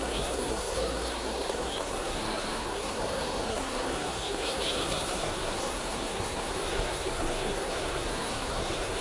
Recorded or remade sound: remade